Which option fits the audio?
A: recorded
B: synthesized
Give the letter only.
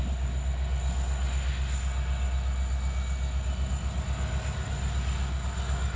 A